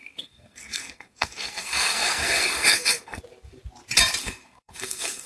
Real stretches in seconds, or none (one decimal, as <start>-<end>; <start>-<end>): 3.2-4.2